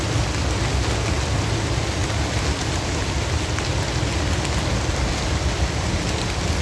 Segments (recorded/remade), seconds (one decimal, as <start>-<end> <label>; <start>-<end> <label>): 0.0-6.6 recorded